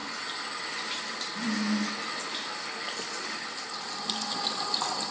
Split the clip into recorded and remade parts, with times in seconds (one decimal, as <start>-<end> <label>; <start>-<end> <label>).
0.0-5.1 recorded